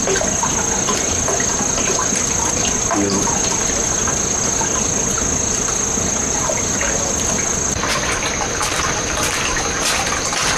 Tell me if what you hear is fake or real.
real